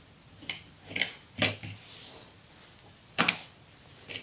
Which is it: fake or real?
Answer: real